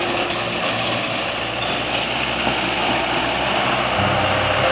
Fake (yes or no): no